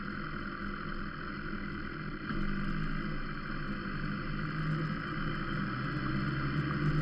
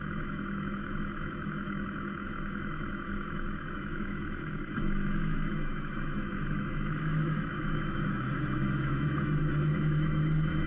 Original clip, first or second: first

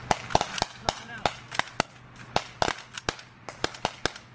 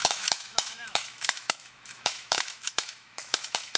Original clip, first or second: first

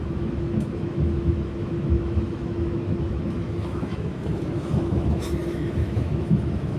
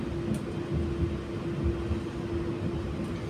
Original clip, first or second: second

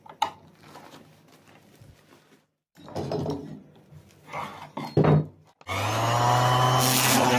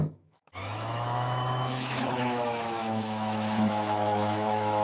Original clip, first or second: first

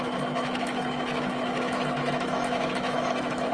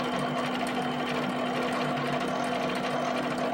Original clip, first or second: second